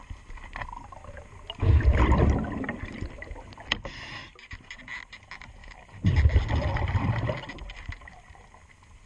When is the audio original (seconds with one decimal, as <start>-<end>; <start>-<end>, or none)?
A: 0.0-9.1